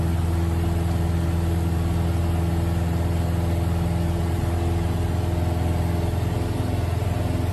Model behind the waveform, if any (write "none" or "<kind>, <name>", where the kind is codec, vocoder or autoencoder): none